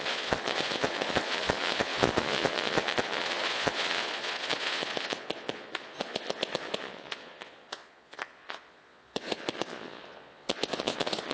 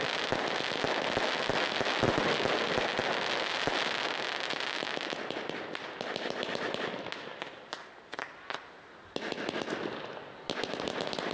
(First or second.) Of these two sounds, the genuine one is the second